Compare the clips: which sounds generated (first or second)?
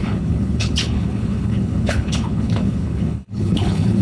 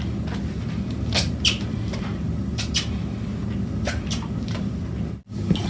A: first